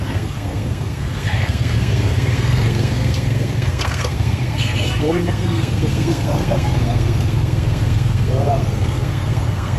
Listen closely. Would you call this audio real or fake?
fake